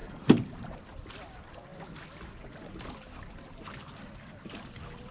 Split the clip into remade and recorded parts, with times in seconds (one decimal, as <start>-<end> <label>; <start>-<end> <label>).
0.0-0.8 remade; 0.8-5.1 recorded

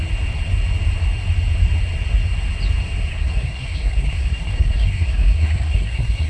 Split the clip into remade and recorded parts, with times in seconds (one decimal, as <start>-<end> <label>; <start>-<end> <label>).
0.0-3.1 recorded; 3.1-6.3 remade

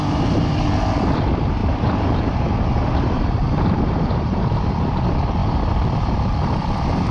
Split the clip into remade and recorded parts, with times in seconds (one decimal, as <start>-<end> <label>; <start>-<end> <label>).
0.0-1.6 recorded; 1.6-4.7 remade; 4.7-7.1 recorded